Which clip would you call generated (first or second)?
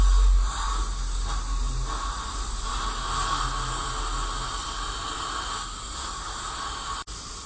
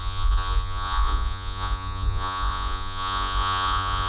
second